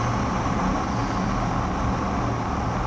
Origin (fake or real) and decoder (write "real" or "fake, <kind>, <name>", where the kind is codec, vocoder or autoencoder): real